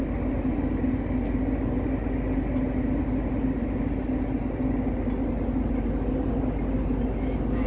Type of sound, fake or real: real